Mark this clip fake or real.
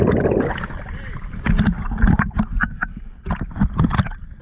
real